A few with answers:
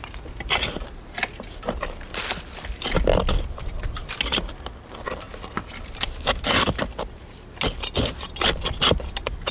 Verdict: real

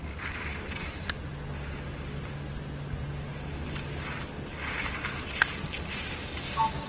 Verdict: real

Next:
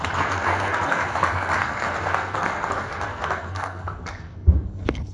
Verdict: fake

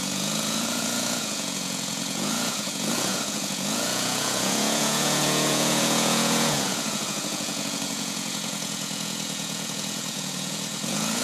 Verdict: fake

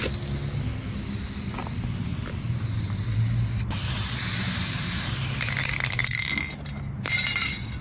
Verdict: real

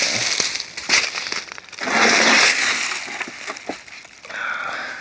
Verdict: real